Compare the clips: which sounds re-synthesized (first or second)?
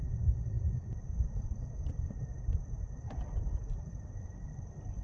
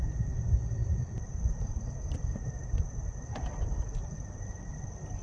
first